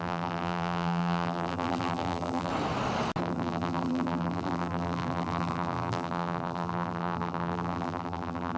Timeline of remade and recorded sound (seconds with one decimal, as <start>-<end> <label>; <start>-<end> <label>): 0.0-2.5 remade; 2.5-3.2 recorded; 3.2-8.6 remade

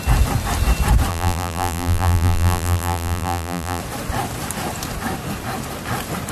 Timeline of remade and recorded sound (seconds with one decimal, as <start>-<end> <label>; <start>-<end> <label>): 0.0-1.1 recorded; 1.1-3.8 remade; 3.8-6.3 recorded

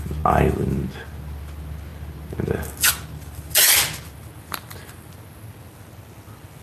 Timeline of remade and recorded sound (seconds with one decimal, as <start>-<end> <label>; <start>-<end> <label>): 0.0-6.6 recorded

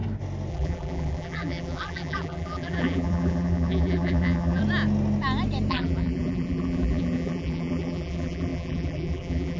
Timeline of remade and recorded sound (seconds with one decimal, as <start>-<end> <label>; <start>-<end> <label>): 0.0-0.5 recorded; 0.5-4.6 remade; 4.6-5.7 recorded; 5.7-9.6 remade

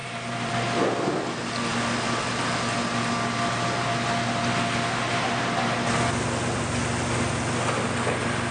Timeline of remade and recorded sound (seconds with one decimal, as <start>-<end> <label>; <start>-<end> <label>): 0.0-0.5 remade; 0.5-8.5 recorded

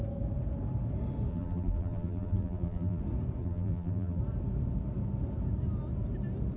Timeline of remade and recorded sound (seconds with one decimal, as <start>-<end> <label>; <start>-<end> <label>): 0.0-1.3 recorded; 1.3-3.0 remade; 3.0-3.4 recorded; 3.4-4.2 remade; 4.2-6.6 recorded

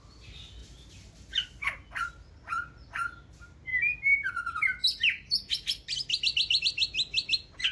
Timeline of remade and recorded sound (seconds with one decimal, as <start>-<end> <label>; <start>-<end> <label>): 0.0-7.7 recorded

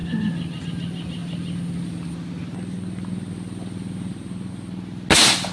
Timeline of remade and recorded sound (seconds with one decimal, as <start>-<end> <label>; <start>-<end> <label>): 0.0-5.5 recorded